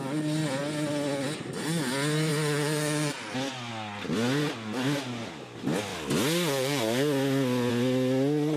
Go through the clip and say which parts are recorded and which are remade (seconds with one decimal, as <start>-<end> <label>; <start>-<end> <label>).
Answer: 0.0-8.6 recorded